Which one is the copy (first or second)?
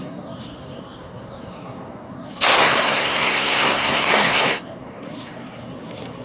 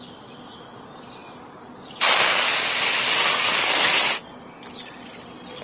first